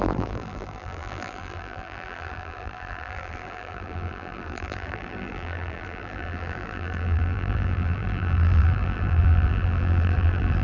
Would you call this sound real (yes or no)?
no